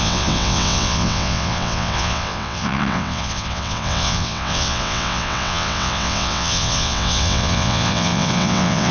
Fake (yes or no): yes